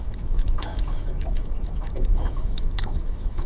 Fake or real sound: fake